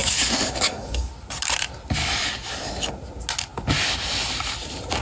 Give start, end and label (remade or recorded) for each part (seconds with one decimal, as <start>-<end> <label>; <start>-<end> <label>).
0.0-1.1 remade; 1.1-2.0 recorded; 2.0-2.9 remade; 2.9-5.0 recorded